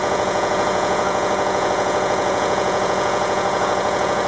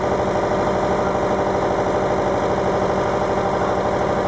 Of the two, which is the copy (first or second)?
first